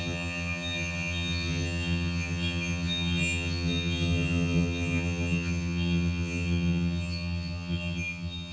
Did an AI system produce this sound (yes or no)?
yes